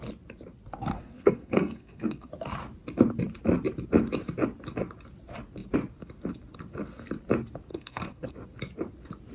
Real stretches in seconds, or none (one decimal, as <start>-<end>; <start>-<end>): 0.0-0.9; 2.3-7.7; 8.3-9.3